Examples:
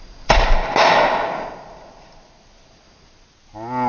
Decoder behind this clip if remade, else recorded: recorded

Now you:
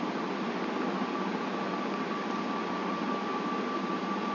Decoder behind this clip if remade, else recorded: recorded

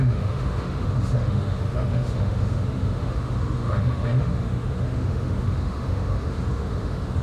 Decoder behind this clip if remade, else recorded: remade, autoencoder, DAC-VAE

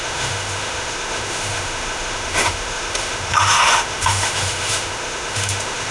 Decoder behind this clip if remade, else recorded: remade, autoencoder, DAC-VAE